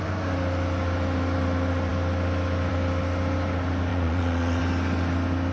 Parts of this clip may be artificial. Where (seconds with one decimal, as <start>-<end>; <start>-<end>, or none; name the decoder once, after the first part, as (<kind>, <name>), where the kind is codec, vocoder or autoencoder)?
3.9-4.6 (vocoder, Vocos)